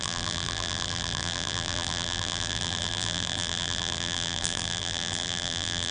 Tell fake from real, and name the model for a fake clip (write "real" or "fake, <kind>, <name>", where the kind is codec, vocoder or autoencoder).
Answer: fake, vocoder, BigVGAN v2